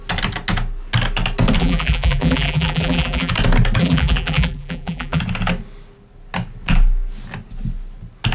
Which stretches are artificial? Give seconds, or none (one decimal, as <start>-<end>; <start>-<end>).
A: 1.6-3.3; 3.8-5.2